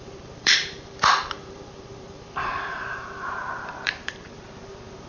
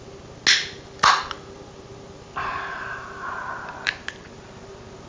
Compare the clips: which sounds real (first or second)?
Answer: second